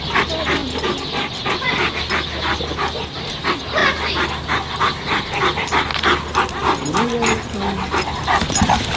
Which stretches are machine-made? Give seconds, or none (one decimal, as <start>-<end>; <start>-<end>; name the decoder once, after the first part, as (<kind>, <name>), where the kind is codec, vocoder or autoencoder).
0.0-0.6 (vocoder, BigVGAN v2); 1.1-9.0